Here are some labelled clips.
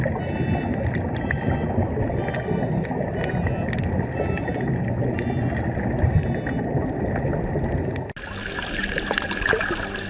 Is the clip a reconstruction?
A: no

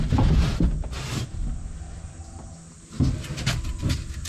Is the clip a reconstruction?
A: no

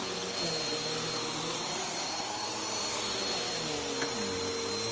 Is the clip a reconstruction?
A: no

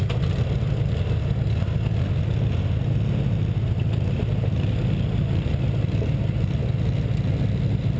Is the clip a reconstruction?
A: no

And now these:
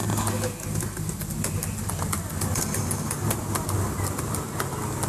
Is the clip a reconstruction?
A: no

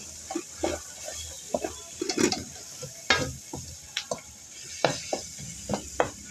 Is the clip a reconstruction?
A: no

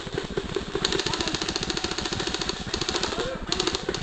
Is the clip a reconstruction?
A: yes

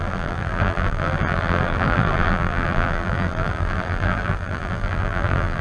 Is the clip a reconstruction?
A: yes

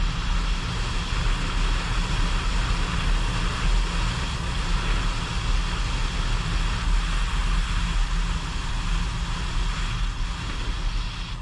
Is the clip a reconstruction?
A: no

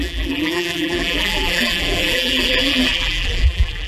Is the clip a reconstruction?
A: yes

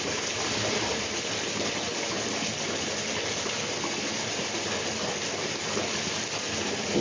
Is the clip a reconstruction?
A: no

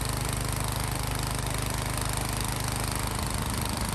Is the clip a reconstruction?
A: no